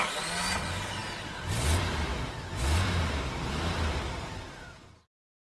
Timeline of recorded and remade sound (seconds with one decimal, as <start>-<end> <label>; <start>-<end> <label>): 0.0-5.5 recorded